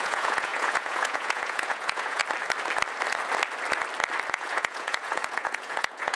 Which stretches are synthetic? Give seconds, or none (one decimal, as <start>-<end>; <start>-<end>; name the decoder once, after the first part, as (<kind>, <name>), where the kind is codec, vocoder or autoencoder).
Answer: 0.0-2.2 (vocoder, Vocos); 4.3-6.2